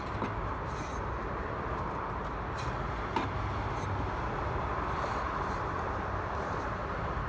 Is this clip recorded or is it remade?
recorded